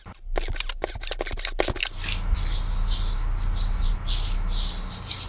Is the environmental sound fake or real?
real